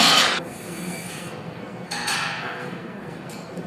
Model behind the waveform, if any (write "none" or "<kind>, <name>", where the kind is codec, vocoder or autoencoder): codec, SNAC